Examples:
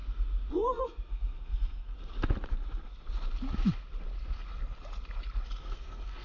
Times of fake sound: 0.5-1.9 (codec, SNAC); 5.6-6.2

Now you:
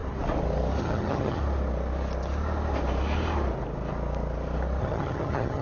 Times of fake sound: 0.8-1.4 (vocoder, HiFi-GAN); 4.8-5.6